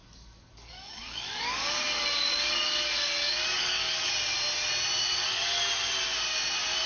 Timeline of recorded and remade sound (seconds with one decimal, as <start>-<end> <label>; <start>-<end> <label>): 0.0-4.1 remade; 4.1-5.0 recorded; 5.0-5.6 remade; 5.6-6.9 recorded